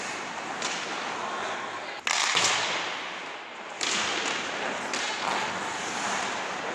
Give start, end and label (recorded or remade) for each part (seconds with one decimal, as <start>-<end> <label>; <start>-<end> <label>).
0.0-6.7 recorded